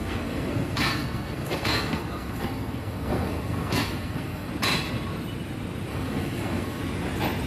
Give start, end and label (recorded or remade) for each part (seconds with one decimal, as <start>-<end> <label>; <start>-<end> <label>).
0.0-4.5 remade; 4.5-5.9 recorded; 5.9-6.8 remade; 6.8-7.5 recorded